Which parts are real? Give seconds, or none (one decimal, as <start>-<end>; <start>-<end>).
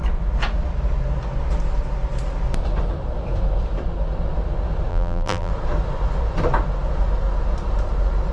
0.0-4.9; 5.5-8.3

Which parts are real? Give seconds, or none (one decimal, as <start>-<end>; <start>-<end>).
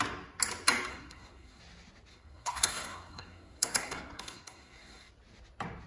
0.0-0.9; 1.6-2.1; 5.1-5.9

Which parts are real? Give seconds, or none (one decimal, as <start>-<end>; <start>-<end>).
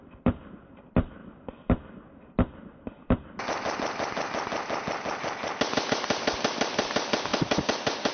1.2-5.9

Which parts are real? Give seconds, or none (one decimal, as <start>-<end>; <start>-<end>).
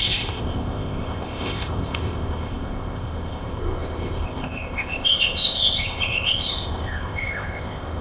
none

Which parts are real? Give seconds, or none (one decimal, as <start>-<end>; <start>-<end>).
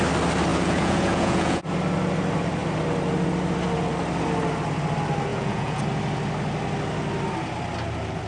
0.0-0.5; 1.6-5.3; 5.8-8.3